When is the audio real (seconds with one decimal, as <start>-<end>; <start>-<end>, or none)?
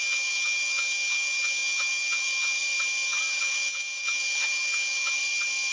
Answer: 2.6-3.4; 5.2-5.7